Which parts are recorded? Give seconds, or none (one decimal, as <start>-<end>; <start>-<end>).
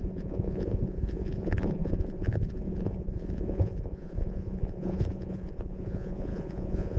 none